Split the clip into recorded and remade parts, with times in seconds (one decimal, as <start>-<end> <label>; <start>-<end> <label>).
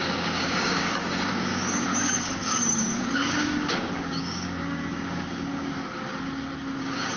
0.0-5.8 remade; 5.8-6.8 recorded; 6.8-7.2 remade